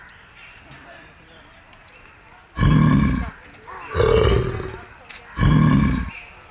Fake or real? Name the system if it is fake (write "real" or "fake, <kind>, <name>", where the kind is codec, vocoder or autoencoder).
real